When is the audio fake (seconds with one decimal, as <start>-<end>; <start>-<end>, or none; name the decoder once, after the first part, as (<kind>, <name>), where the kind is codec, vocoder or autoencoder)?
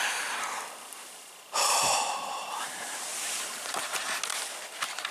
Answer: 0.9-4.0 (vocoder, BigVGAN v2)